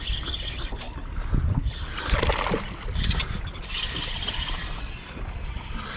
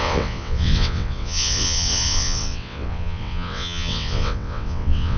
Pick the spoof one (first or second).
second